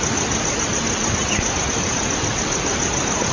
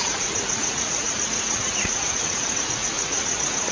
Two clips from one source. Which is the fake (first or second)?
second